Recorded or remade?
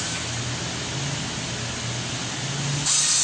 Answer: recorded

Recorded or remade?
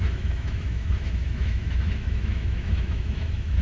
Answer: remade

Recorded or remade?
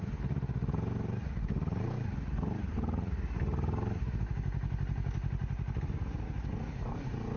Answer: recorded